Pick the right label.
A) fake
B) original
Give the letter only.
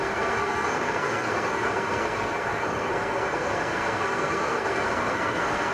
A